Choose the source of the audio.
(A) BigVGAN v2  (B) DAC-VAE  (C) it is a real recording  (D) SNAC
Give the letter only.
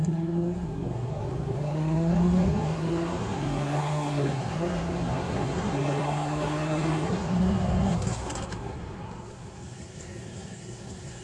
D